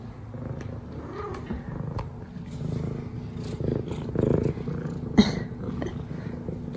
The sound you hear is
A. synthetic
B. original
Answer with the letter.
B